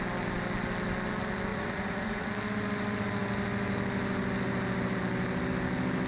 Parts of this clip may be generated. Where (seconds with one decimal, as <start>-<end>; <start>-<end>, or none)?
1.5-2.3